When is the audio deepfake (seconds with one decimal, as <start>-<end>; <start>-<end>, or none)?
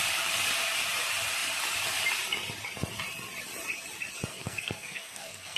4.3-5.6